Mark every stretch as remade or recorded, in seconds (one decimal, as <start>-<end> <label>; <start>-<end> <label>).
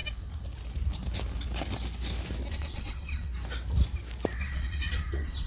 0.0-2.5 recorded; 2.5-3.3 remade; 3.3-4.4 recorded; 4.4-5.5 remade